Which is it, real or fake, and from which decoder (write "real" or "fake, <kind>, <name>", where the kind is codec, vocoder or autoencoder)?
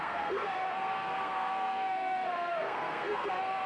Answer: fake, codec, SNAC